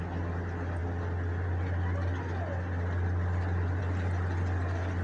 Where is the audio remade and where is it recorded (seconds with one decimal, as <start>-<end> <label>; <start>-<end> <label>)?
0.0-5.0 recorded